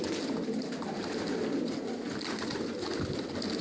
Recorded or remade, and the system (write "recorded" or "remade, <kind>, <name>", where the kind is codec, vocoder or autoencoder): recorded